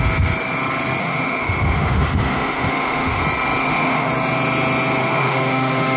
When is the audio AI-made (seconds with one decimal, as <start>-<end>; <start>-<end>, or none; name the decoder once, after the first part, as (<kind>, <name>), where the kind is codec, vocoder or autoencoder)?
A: 1.0-3.2 (autoencoder, DAC-VAE); 3.6-4.1; 5.0-6.0